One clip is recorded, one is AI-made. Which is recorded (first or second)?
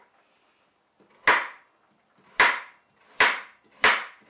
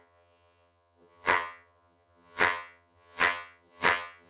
first